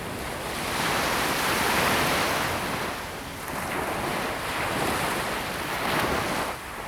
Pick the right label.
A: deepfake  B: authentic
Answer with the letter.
B